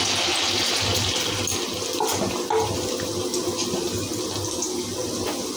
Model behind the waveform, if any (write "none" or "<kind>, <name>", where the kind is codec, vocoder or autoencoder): none